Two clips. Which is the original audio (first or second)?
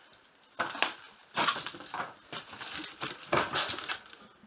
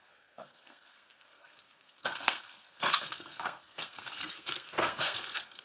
first